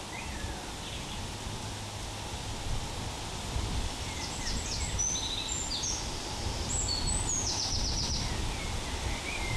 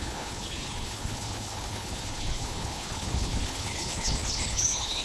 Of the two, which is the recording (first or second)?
first